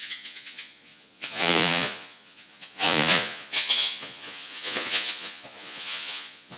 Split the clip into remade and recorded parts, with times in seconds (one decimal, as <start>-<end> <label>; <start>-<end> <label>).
0.0-6.6 remade